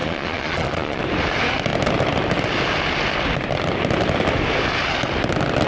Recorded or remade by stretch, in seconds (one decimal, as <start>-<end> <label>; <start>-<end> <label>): 0.0-1.0 remade; 1.0-5.7 recorded